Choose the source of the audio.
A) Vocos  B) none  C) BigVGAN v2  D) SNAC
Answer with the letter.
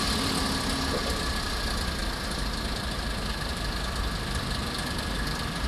B